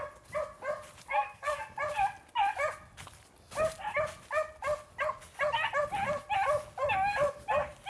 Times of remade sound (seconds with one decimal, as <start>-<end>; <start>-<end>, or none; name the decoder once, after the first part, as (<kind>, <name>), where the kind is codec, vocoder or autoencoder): 1.1-1.6 (codec, SNAC)